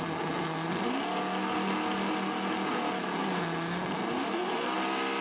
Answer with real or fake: real